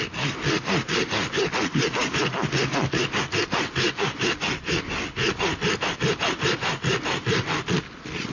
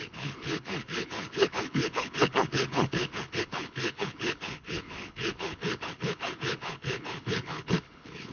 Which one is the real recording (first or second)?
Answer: first